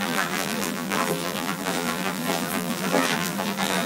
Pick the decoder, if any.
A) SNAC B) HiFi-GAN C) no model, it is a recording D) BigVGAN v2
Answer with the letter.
D